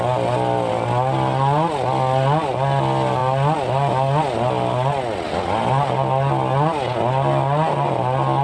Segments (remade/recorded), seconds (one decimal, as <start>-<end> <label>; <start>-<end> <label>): 0.0-8.4 recorded